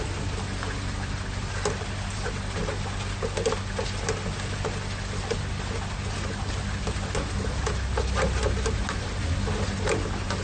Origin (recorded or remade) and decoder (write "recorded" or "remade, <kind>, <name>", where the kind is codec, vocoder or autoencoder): recorded